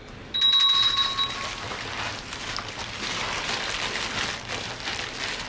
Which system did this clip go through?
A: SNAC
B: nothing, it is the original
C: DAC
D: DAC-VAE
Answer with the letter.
B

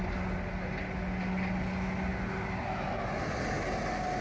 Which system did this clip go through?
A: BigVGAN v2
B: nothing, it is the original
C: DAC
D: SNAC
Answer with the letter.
B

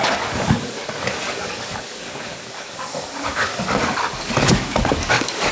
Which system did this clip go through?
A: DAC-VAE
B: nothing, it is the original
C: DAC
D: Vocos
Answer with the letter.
C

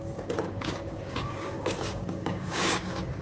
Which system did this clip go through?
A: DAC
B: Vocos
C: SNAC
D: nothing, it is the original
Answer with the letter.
A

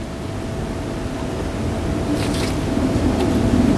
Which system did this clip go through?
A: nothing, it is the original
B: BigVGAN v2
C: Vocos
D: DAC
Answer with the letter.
A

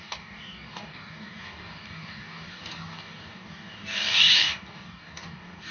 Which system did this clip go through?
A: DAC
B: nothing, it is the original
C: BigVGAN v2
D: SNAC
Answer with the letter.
A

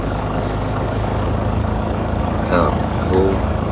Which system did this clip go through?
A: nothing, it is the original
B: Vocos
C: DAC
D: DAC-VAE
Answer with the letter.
C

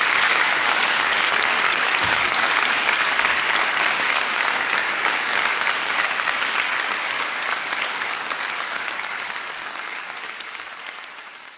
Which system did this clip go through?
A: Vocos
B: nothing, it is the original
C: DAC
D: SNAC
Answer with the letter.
C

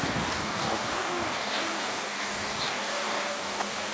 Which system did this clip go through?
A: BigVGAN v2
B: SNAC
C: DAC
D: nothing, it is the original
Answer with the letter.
C